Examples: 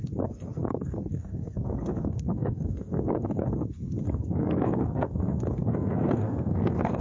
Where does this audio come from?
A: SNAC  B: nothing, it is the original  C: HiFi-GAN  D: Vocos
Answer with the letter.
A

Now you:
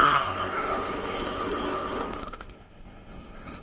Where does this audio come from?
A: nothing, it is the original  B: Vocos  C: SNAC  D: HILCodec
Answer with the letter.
C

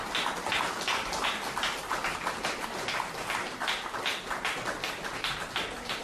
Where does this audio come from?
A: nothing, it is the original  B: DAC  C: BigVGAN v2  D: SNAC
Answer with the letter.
A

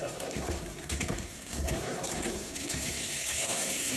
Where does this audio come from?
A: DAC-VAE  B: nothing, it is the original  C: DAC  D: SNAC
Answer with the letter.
D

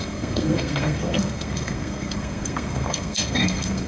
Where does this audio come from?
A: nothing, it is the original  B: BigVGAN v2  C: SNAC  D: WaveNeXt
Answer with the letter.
C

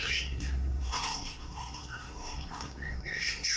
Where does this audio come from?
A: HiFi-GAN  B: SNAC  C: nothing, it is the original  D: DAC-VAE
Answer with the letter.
B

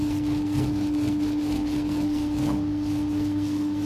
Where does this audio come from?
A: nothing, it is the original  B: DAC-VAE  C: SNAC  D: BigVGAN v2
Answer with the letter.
C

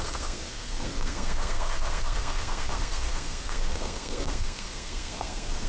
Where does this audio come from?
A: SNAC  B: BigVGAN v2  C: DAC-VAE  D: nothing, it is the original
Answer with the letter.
A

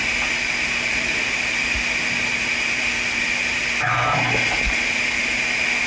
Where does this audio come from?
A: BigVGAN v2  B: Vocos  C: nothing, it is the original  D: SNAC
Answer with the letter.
C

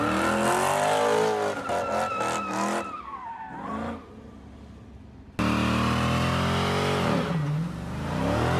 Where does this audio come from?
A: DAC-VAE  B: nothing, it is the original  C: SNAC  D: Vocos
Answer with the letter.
B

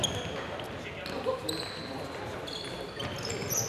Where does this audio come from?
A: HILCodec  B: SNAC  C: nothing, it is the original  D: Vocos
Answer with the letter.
C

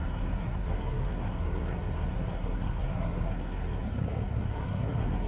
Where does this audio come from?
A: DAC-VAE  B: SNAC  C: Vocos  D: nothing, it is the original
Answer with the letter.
B